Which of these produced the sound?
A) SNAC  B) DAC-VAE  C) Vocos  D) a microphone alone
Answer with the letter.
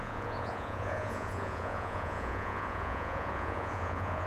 C